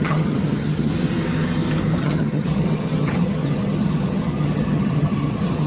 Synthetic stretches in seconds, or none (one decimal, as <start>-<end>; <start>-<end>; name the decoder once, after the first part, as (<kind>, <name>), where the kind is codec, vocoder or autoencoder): 0.0-0.9 (vocoder, HiFi-GAN); 2.0-5.7